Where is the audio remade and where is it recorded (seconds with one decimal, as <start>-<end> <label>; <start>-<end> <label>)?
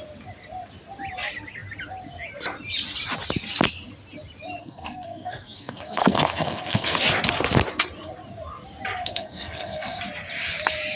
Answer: 0.0-4.6 recorded; 4.6-7.0 remade; 7.0-9.0 recorded; 9.0-10.0 remade; 10.0-11.0 recorded